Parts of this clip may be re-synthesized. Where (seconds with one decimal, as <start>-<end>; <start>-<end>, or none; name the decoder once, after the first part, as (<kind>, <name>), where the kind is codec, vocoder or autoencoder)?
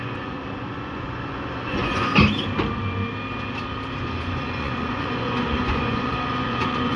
0.0-2.1 (vocoder, Vocos); 4.0-7.0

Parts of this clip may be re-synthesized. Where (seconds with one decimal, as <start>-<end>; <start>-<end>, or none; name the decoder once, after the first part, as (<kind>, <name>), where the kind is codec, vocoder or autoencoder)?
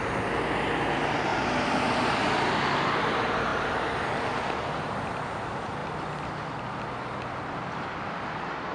1.3-2.8 (vocoder, BigVGAN v2); 3.5-5.0; 5.8-8.7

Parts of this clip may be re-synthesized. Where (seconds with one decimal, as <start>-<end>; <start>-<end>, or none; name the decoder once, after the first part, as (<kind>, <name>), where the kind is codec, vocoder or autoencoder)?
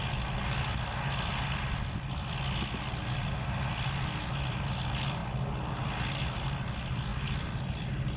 none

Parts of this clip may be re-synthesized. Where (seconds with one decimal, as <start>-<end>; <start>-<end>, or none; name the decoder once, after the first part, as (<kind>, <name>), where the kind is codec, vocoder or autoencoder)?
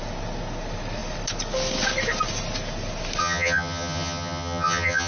3.2-5.1 (vocoder, HiFi-GAN)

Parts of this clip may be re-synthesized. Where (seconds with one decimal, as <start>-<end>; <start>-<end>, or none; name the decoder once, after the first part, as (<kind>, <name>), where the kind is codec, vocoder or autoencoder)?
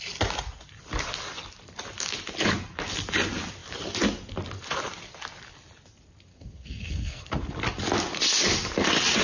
6.3-7.3 (codec, SNAC)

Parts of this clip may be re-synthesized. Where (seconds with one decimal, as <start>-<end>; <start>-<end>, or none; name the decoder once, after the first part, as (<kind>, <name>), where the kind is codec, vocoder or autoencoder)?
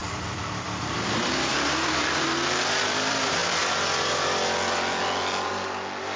0.0-6.2 (vocoder, BigVGAN v2)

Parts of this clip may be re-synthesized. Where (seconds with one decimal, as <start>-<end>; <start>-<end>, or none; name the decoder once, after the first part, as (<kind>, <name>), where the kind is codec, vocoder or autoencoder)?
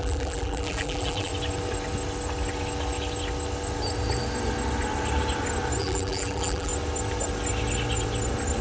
0.0-1.3 (vocoder, BigVGAN v2); 5.8-6.7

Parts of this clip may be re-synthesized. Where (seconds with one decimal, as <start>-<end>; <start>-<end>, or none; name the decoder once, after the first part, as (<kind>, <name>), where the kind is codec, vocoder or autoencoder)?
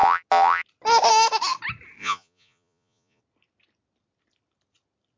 2.0-3.2 (vocoder, Vocos)